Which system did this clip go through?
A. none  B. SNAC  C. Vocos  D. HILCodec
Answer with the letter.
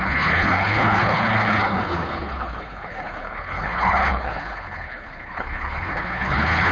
D